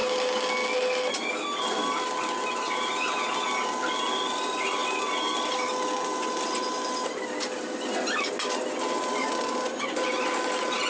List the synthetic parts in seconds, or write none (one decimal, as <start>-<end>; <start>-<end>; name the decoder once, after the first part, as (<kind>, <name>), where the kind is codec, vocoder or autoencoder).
none